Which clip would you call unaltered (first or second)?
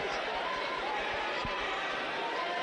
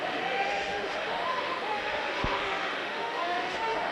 first